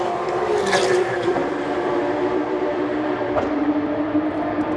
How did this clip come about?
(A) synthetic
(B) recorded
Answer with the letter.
A